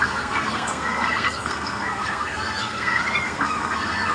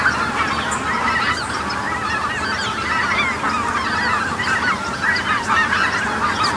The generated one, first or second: first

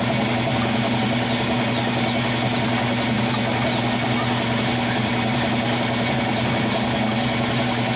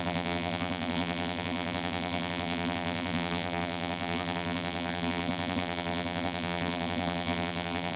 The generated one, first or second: second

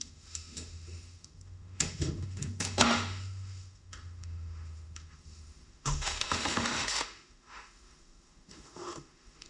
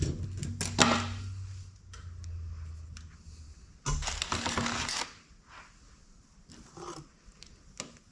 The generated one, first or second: first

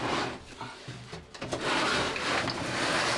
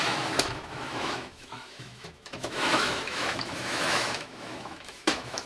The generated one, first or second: second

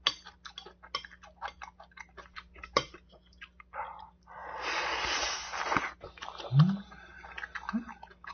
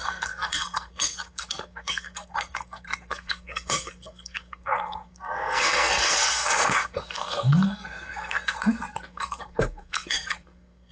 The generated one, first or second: second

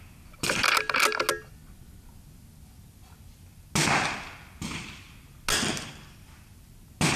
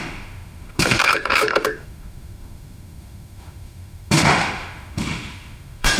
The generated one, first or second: second